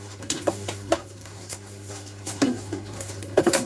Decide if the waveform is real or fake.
fake